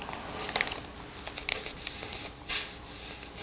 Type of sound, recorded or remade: recorded